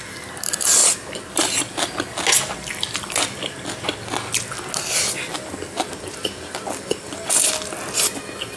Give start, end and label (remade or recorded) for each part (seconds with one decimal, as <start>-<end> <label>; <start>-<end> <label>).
0.0-8.6 recorded